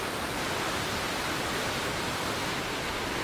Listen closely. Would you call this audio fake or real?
real